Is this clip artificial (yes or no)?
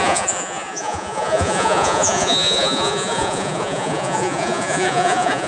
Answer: yes